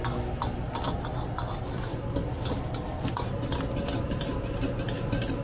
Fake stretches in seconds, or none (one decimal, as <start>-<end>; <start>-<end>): none